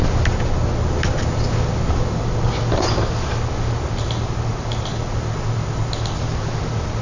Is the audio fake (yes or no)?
no